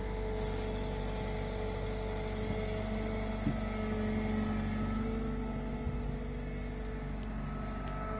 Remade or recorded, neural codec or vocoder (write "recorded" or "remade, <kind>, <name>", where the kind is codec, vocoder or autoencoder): recorded